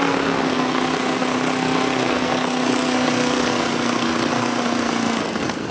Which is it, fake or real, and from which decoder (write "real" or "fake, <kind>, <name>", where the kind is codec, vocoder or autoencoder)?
fake, codec, SNAC